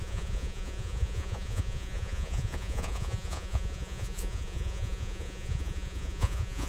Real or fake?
fake